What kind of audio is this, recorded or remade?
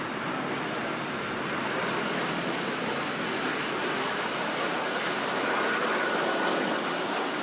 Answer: recorded